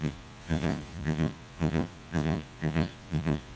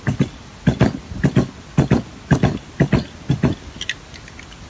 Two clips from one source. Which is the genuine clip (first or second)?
second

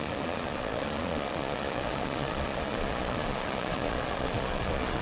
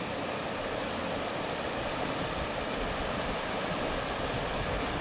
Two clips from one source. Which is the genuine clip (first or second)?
second